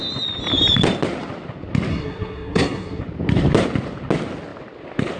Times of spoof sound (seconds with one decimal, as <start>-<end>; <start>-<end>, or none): 1.9-3.0